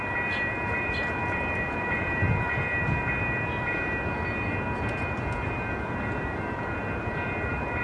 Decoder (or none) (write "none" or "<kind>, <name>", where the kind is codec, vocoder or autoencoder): vocoder, BigVGAN v2